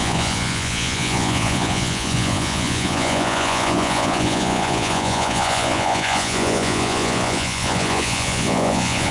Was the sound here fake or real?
fake